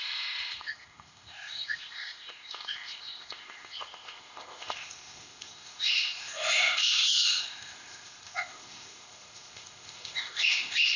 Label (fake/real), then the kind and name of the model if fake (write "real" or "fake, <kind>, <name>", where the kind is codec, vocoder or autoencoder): fake, codec, ZipCodec